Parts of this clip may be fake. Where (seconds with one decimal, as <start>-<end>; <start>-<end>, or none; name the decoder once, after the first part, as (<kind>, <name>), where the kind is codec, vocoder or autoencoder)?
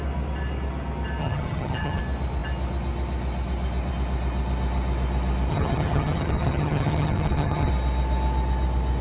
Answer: 1.2-2.0 (vocoder, HiFi-GAN); 5.5-7.7